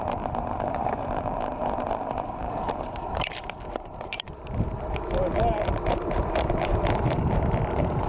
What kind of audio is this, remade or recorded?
remade